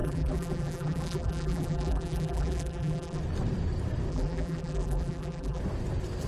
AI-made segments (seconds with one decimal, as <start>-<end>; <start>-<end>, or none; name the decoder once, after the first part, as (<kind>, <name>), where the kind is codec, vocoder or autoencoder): 0.0-3.2 (vocoder, BigVGAN v2); 4.1-5.6